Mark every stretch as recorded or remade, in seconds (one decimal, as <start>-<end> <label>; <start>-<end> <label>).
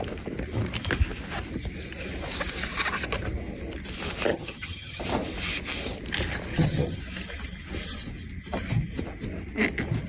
0.0-4.3 recorded; 4.3-5.0 remade; 5.0-6.5 recorded; 6.5-7.0 remade; 7.0-10.1 recorded